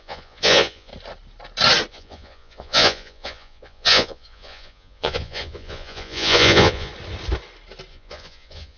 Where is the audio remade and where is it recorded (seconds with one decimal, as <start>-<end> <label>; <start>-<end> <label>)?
0.0-0.9 remade; 0.9-1.9 recorded; 1.9-6.9 remade; 6.9-7.9 recorded; 7.9-8.8 remade